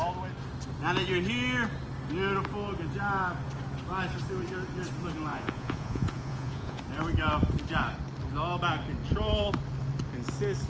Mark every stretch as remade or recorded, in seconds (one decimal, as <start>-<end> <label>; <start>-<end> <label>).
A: 0.0-5.3 recorded; 5.3-6.8 remade; 6.8-10.7 recorded